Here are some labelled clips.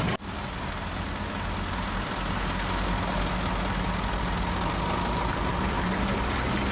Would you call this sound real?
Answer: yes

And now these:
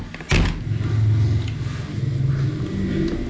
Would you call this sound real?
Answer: yes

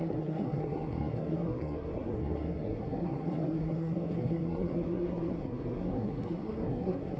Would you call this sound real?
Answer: no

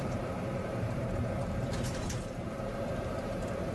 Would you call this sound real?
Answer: no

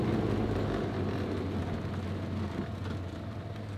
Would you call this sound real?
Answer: yes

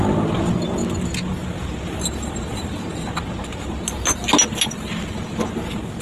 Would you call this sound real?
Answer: yes